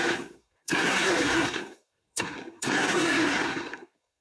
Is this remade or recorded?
remade